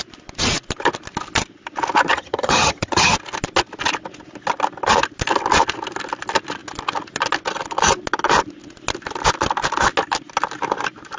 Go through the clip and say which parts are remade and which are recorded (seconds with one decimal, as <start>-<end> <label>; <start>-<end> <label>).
0.0-2.1 recorded; 2.1-3.1 remade; 3.1-11.2 recorded